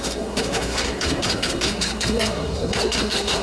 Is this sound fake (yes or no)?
yes